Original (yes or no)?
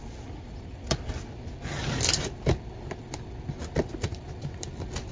yes